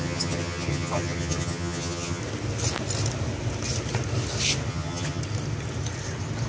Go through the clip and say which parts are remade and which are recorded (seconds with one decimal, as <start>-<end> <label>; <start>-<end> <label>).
0.0-2.2 remade; 2.2-4.7 recorded; 4.7-5.2 remade; 5.2-6.5 recorded